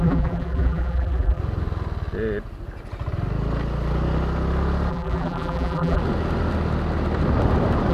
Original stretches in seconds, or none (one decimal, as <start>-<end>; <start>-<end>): 1.4-4.9; 6.0-7.9